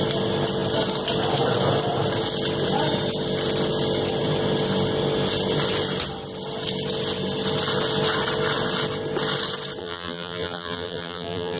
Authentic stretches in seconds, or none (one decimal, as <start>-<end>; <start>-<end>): 0.0-9.8